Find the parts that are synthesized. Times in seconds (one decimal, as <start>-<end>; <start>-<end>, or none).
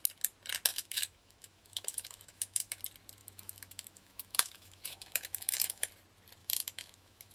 0.7-2.8; 3.2-5.9; 6.4-7.3